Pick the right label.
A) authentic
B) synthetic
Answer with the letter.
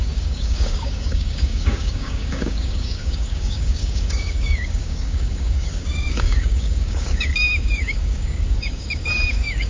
B